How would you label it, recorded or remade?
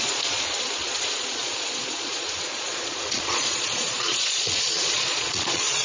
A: remade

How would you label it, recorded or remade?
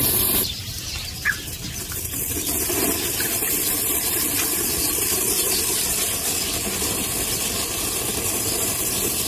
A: remade